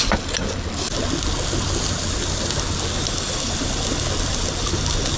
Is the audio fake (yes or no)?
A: no